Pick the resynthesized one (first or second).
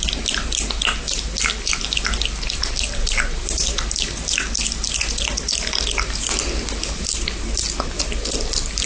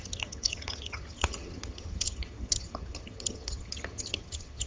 second